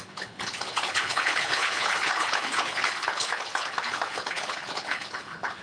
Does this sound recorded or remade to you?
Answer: remade